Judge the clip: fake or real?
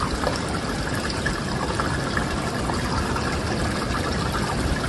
real